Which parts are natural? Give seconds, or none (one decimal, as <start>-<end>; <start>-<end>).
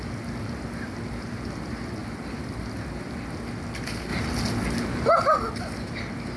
0.0-6.4